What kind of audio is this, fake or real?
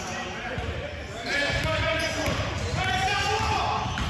real